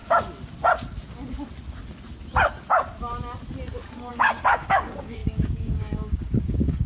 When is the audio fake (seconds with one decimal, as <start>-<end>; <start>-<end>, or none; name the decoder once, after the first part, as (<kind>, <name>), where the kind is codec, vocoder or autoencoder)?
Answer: 4.1-6.9 (codec, DAC)